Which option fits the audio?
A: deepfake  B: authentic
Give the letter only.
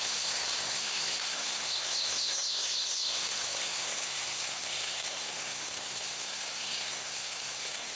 A